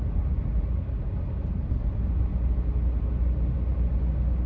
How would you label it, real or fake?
real